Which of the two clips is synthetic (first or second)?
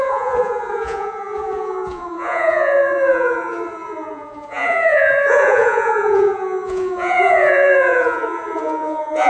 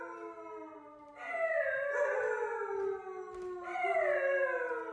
first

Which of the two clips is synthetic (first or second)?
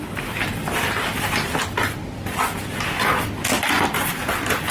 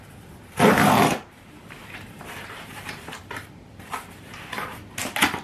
second